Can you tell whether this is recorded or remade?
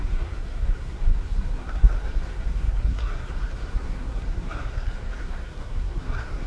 remade